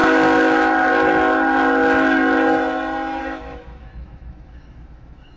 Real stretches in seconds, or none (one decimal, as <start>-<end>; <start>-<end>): 0.0-3.2